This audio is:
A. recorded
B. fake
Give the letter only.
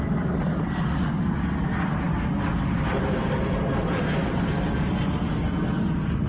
A